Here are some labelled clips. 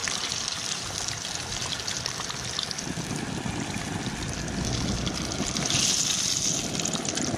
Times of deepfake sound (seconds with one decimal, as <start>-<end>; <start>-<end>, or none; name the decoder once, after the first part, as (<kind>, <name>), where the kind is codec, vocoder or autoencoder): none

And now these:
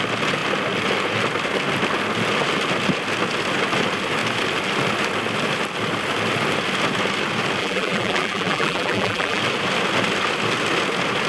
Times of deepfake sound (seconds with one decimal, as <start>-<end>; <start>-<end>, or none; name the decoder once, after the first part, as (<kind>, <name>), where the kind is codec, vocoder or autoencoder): 7.6-9.4 (vocoder, BigVGAN v2)

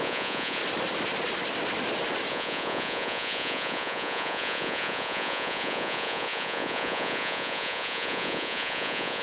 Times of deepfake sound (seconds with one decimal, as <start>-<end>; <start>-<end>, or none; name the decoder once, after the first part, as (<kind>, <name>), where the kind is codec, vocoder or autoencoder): 0.0-0.6 (vocoder, Vocos); 2.3-9.2

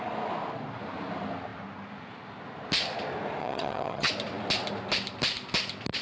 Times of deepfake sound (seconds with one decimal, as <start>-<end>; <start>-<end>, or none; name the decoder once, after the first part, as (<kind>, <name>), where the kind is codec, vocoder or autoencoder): 3.4-4.1 (vocoder, HiFi-GAN)